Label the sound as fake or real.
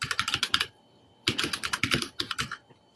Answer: fake